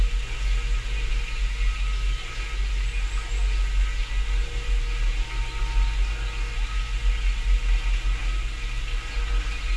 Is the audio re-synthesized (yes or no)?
no